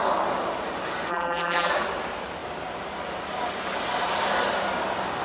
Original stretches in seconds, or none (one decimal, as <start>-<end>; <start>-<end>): 0.0-1.1; 1.7-5.2